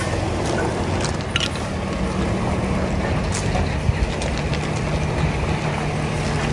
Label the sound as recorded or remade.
recorded